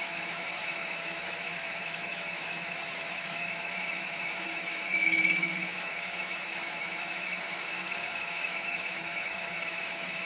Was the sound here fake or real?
fake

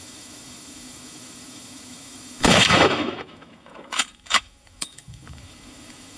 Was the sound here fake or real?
fake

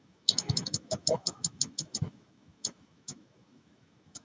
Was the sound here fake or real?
fake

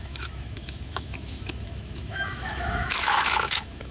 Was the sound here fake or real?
fake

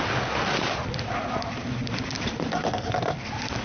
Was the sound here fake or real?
real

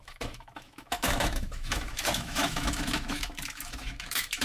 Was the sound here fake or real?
fake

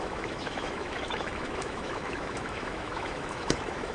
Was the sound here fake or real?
fake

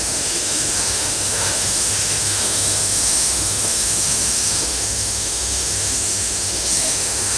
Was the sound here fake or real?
fake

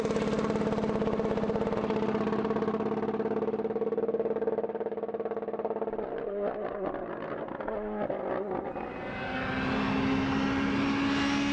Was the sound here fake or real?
real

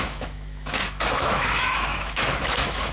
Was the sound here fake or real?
fake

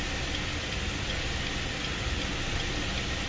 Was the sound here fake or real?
real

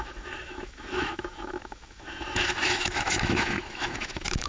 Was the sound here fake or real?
fake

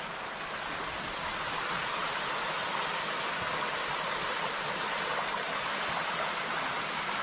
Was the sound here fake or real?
real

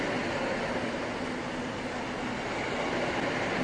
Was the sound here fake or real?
real